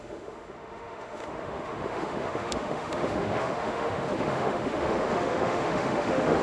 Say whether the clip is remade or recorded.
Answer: remade